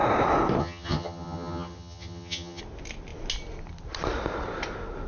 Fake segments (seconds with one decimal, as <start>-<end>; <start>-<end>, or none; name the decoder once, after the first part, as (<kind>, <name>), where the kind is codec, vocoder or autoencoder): 0.6-2.6 (vocoder, HiFi-GAN)